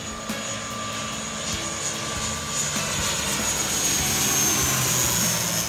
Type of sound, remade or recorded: recorded